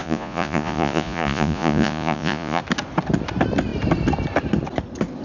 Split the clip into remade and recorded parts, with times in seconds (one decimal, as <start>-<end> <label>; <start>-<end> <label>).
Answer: 0.0-2.6 remade; 2.6-5.2 recorded